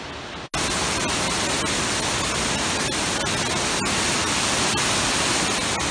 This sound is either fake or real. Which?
real